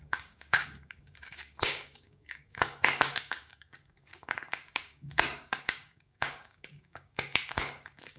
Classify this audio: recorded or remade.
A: remade